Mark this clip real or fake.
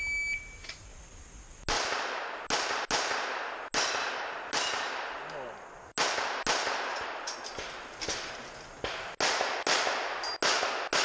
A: real